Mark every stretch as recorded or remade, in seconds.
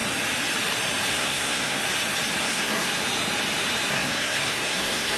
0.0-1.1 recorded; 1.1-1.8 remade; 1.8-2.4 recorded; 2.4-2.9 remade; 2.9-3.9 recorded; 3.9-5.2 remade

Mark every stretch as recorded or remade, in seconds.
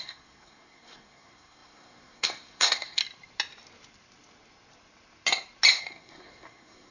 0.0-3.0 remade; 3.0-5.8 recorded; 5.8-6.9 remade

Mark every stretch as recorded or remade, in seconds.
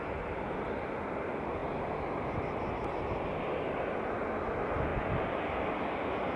0.0-6.4 recorded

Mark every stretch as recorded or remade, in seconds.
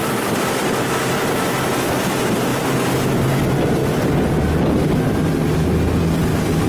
0.0-6.7 recorded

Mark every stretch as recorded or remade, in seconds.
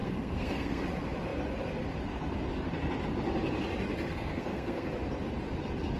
0.0-0.8 remade; 0.8-4.1 recorded; 4.1-4.9 remade; 4.9-6.0 recorded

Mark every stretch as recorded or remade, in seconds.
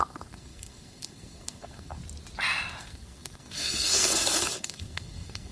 0.0-2.0 remade; 2.0-2.8 recorded; 2.8-5.5 remade